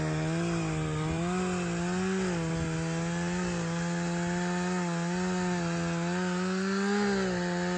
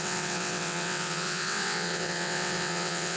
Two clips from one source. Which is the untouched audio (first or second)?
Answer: first